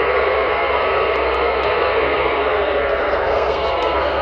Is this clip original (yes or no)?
no